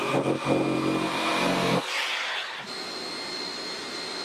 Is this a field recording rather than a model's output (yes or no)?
yes